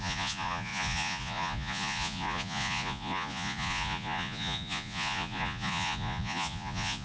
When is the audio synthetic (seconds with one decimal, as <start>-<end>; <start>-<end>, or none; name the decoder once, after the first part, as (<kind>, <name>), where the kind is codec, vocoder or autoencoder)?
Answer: 0.0-7.0 (vocoder, Vocos)